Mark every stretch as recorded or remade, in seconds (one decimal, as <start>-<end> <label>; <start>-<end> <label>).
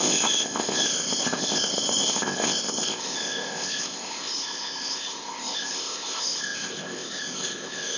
0.0-8.0 remade